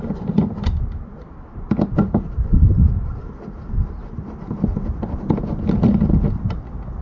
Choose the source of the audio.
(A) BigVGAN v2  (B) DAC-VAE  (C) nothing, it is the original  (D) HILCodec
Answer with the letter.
C